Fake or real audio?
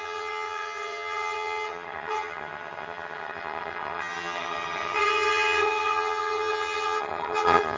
fake